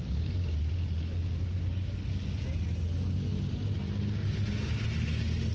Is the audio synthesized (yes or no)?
no